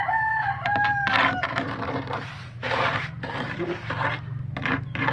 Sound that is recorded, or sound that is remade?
remade